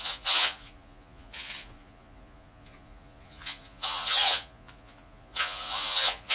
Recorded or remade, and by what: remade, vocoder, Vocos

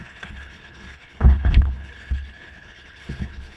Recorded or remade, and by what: remade, codec, HILCodec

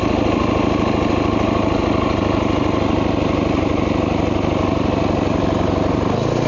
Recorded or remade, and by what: recorded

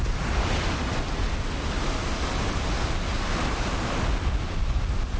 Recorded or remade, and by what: recorded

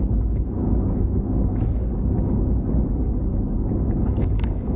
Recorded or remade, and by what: remade, codec, DAC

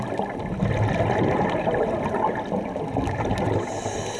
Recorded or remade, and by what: recorded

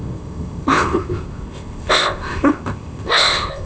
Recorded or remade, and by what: remade, codec, ZipCodec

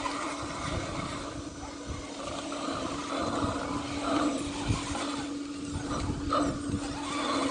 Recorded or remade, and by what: recorded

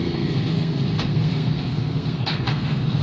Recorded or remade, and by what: remade, codec, SNAC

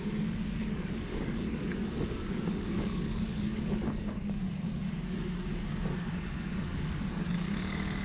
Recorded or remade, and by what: remade, codec, DAC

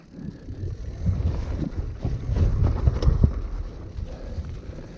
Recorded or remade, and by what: recorded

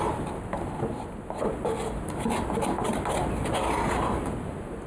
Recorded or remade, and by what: recorded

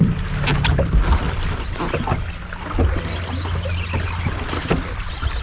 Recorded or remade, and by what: recorded